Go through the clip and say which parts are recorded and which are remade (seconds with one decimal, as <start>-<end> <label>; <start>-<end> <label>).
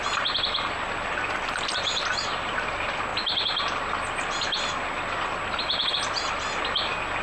0.0-7.2 recorded